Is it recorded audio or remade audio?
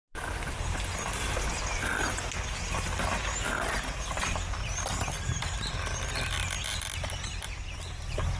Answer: recorded